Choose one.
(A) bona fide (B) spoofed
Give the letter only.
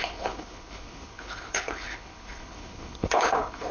B